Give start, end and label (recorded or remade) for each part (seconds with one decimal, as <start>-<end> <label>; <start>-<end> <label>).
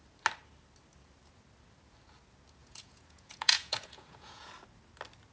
0.0-2.6 recorded; 2.6-4.5 remade; 4.5-5.3 recorded